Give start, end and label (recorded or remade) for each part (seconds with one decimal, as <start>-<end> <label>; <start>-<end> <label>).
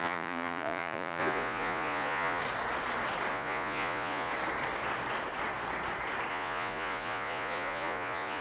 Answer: 0.0-2.4 remade; 2.4-3.3 recorded; 3.3-4.3 remade; 4.3-6.3 recorded; 6.3-8.4 remade